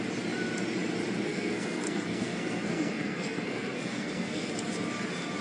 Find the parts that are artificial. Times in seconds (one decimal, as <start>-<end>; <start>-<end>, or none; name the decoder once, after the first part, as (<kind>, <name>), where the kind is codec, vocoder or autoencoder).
1.3-4.5 (codec, SNAC)